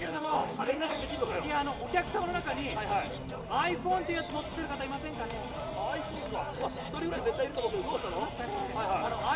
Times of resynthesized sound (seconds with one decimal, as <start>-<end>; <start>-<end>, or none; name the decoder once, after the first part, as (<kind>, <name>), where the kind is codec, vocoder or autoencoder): 0.0-1.1 (codec, DAC)